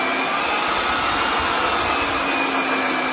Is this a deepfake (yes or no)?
no